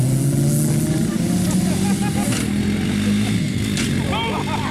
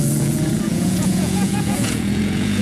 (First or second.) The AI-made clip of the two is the second